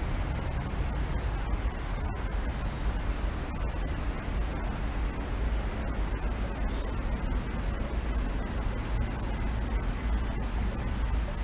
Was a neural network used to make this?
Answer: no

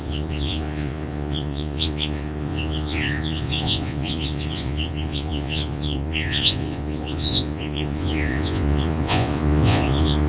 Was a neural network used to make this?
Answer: yes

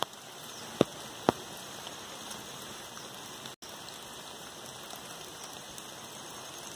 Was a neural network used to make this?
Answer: no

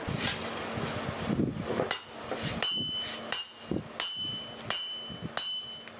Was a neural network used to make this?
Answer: no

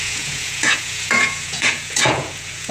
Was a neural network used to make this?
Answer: yes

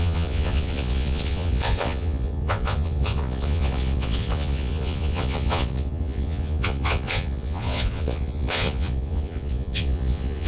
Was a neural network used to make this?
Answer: yes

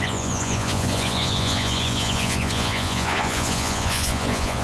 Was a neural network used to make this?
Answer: yes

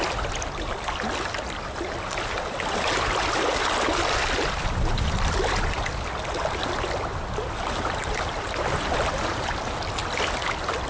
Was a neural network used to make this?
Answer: no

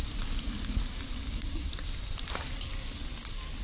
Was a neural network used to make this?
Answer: no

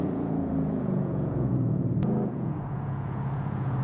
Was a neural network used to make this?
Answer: yes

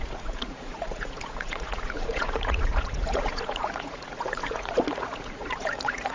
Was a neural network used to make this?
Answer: yes